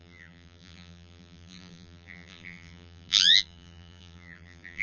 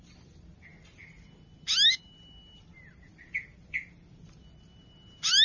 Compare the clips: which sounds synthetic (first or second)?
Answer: first